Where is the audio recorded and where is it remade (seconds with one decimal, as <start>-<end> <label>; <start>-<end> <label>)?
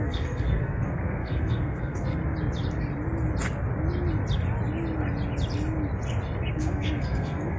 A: 0.0-2.2 remade; 2.2-6.5 recorded; 6.5-7.6 remade